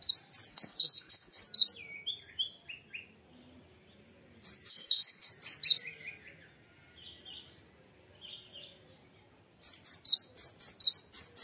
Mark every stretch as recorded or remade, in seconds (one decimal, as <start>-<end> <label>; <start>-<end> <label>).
0.0-0.5 recorded; 0.5-1.4 remade; 1.4-4.7 recorded; 4.7-5.3 remade; 5.3-11.4 recorded